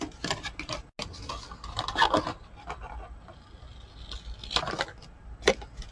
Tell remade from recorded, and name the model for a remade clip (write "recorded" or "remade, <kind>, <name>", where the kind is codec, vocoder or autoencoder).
recorded